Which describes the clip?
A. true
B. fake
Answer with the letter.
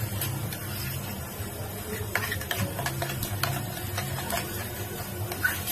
A